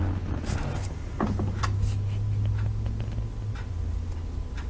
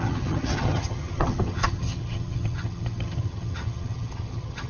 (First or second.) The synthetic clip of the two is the second